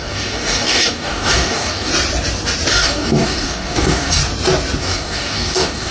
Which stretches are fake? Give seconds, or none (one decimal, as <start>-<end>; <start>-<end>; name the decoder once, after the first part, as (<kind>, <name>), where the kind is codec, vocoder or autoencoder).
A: 0.0-1.9 (codec, DAC); 2.7-4.2; 4.8-5.9